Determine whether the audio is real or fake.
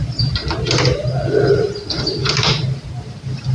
fake